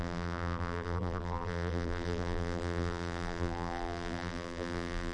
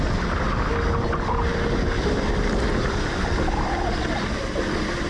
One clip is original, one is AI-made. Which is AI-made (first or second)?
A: first